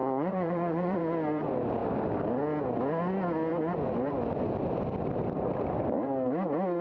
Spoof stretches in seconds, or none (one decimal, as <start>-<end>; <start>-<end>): 0.0-1.0